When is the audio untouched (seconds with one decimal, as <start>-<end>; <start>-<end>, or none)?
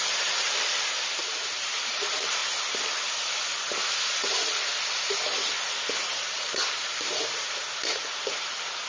2.4-6.0